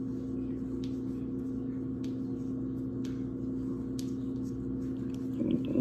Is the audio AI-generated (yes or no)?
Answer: no